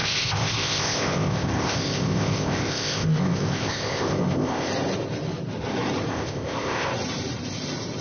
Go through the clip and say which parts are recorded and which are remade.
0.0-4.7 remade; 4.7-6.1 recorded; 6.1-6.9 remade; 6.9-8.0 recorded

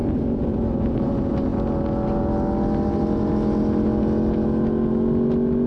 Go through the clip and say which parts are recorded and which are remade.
0.0-1.1 remade; 1.1-5.7 recorded

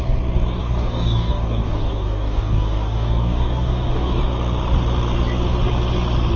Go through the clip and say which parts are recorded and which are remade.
0.0-0.6 recorded; 0.6-4.2 remade; 4.2-6.4 recorded

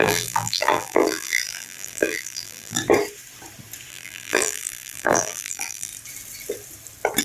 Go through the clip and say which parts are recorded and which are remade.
0.0-2.8 remade; 2.8-3.9 recorded; 3.9-5.9 remade; 5.9-7.2 recorded

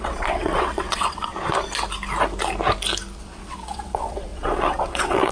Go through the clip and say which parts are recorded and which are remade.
0.0-1.3 remade; 1.3-3.2 recorded; 3.2-5.3 remade